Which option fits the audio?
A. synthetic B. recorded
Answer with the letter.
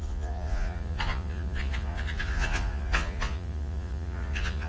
A